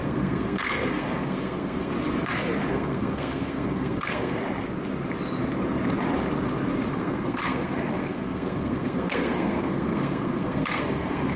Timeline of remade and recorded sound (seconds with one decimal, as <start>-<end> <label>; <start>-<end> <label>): 0.0-1.9 remade; 1.9-2.7 recorded; 2.7-4.4 remade; 4.4-6.9 recorded; 6.9-11.4 remade